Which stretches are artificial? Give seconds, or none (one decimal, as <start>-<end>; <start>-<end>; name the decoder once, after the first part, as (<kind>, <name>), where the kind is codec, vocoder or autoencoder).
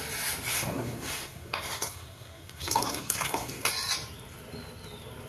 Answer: 0.5-3.7 (codec, SNAC)